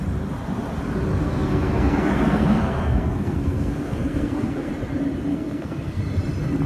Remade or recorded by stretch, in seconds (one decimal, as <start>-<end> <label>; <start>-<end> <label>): 0.0-1.1 recorded; 1.1-4.7 remade; 4.7-5.3 recorded; 5.3-6.0 remade; 6.0-6.7 recorded